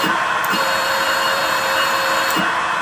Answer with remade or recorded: remade